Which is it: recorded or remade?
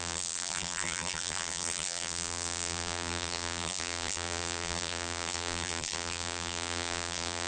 remade